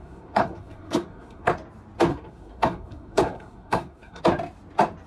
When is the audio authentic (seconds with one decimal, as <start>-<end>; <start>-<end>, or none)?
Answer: 1.5-2.1; 4.2-5.1